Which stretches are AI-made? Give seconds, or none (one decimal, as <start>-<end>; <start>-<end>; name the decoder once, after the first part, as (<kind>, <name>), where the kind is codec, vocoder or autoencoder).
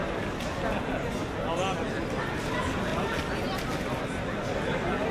none